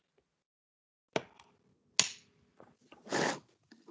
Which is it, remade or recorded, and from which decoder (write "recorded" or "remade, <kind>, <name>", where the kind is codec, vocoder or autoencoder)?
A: recorded